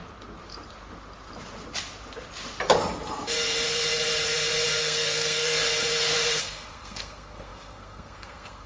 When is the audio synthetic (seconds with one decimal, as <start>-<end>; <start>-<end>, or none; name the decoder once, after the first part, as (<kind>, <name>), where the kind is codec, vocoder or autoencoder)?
4.8-5.6 (codec, SNAC); 6.4-8.7